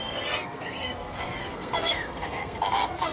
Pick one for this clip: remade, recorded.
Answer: remade